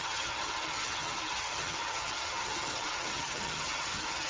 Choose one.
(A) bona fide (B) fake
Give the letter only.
B